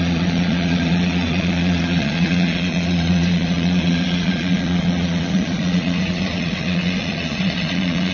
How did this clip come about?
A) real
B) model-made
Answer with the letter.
B